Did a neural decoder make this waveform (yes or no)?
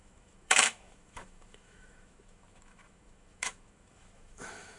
yes